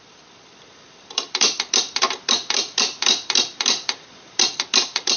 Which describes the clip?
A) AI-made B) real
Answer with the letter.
A